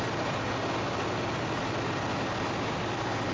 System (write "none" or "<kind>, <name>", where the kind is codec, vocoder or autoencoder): none